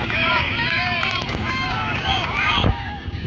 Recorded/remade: remade